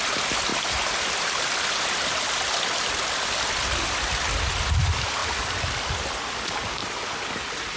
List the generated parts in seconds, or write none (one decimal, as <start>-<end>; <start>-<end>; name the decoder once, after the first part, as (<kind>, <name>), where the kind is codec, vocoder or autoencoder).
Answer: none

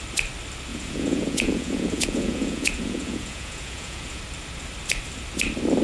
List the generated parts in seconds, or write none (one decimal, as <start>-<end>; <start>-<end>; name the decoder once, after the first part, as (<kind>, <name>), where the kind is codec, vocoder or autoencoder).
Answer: 0.7-4.2 (vocoder, Vocos)

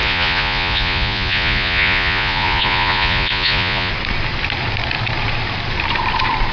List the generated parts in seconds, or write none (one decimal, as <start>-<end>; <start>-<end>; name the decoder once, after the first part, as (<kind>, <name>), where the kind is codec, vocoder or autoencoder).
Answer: 0.0-3.9 (vocoder, Vocos)